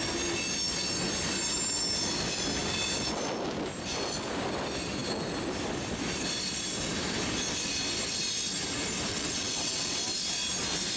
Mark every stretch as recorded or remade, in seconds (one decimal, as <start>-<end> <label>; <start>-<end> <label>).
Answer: 0.0-9.1 recorded; 9.1-10.0 remade; 10.0-11.0 recorded